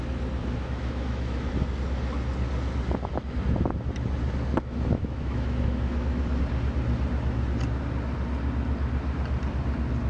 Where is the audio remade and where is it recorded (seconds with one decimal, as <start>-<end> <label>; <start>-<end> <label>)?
0.0-0.4 recorded; 0.4-1.5 remade; 1.5-4.5 recorded; 4.5-6.4 remade; 6.4-10.1 recorded